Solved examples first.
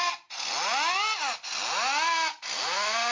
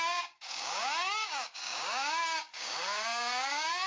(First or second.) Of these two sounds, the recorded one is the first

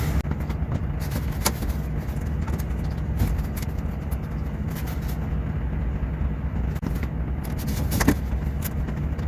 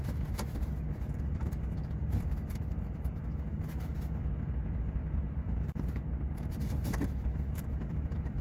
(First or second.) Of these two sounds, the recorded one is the first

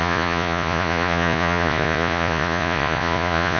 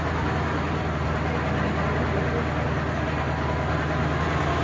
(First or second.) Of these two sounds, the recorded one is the second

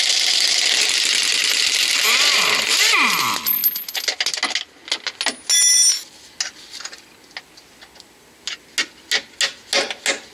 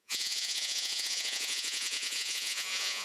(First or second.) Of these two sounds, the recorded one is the first